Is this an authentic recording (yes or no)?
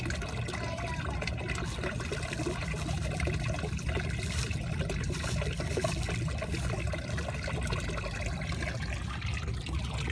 yes